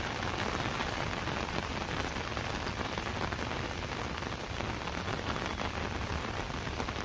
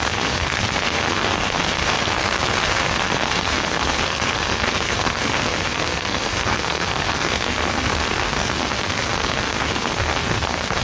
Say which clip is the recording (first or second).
first